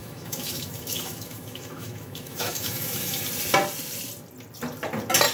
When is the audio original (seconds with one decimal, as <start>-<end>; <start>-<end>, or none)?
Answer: 3.2-5.3